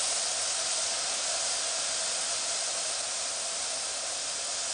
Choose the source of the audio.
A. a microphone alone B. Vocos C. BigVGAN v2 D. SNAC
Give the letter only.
A